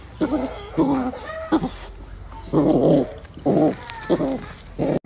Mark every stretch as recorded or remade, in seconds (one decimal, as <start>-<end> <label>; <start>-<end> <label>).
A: 0.0-5.1 recorded